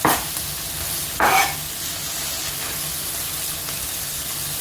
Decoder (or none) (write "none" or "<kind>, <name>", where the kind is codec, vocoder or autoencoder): none